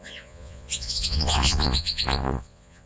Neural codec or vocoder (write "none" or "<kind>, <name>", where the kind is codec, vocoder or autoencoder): vocoder, Vocos